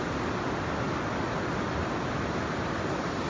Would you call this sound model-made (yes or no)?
no